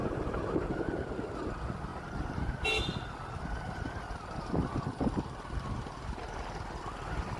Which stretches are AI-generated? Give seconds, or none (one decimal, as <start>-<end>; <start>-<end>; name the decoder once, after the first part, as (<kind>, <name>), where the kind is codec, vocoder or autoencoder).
0.0-0.9 (vocoder, BigVGAN v2); 1.9-2.5